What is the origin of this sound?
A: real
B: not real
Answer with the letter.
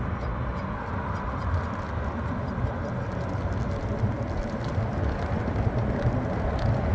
A